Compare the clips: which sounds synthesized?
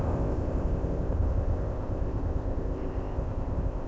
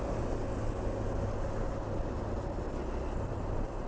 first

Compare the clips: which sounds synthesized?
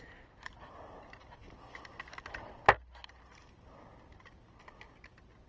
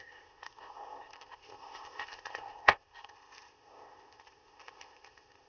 second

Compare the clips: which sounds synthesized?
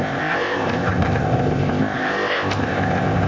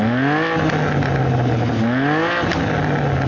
first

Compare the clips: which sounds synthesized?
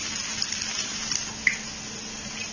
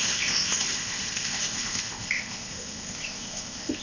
second